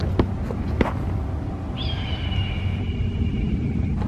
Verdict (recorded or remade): recorded